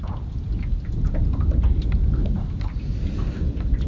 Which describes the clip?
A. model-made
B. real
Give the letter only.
B